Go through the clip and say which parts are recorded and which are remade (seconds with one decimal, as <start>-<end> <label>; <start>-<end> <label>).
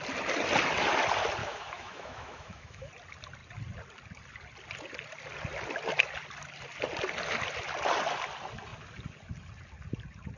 0.0-1.4 recorded; 1.4-2.9 remade; 2.9-10.4 recorded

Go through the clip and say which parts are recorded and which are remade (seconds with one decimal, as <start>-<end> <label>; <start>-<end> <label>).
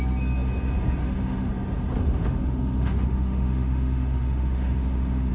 0.0-1.0 recorded; 1.0-1.5 remade; 1.5-2.0 recorded; 2.0-5.3 remade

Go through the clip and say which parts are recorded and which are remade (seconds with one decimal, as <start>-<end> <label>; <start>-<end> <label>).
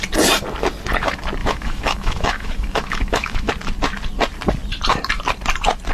0.0-1.4 recorded; 1.4-3.5 remade; 3.5-5.9 recorded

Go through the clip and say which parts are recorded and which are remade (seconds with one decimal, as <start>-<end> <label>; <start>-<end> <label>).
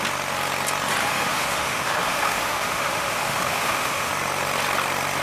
0.0-1.0 recorded; 1.0-4.1 remade; 4.1-5.2 recorded